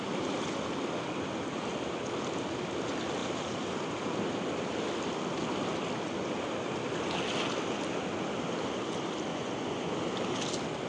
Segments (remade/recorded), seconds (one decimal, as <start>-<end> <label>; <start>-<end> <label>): 0.0-9.3 recorded; 9.3-9.9 remade; 9.9-10.9 recorded